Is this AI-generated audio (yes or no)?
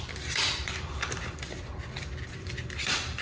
yes